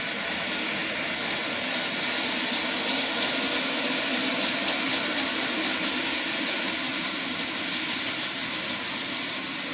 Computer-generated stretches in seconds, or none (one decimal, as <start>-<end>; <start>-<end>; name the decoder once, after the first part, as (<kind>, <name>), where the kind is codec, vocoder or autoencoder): none